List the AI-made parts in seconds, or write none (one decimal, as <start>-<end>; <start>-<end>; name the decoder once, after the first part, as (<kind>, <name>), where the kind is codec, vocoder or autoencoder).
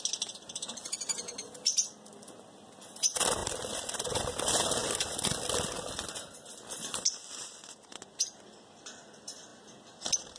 none